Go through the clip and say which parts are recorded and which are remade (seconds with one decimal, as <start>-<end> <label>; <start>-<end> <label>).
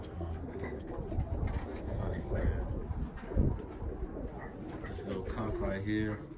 0.0-0.9 remade; 0.9-1.8 recorded; 1.8-2.4 remade; 2.4-6.4 recorded